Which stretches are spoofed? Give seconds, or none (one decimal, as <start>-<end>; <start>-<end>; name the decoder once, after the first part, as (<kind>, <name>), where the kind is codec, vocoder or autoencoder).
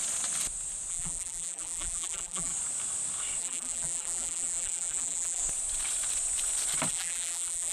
0.9-2.5 (vocoder, BigVGAN v2); 3.4-5.4; 6.9-7.7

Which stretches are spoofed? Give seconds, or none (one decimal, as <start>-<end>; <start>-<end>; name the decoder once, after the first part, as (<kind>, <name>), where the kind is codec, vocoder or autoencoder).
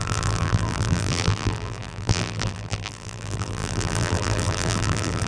0.0-5.3 (vocoder, BigVGAN v2)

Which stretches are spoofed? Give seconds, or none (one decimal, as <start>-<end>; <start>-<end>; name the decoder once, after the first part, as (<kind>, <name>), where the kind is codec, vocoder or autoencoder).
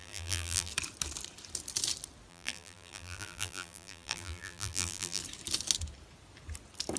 0.0-0.7 (vocoder, BigVGAN v2); 2.3-5.2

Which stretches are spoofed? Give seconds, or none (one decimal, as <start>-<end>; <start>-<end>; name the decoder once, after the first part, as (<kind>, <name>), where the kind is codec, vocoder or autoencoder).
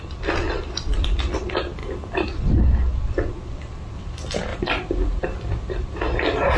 0.0-1.8 (vocoder, BigVGAN v2); 3.3-6.6